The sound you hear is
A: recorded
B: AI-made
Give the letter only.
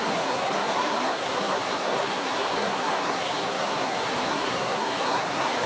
B